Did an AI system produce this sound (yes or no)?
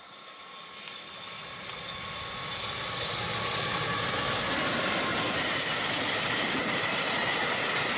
no